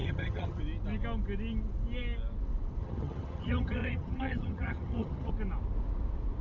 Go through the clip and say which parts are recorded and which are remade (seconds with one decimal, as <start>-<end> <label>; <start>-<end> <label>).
0.0-0.6 remade; 0.6-2.8 recorded; 2.8-5.3 remade; 5.3-6.4 recorded